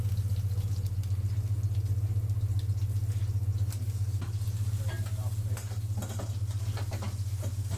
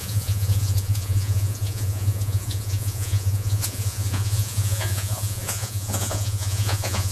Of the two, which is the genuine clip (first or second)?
first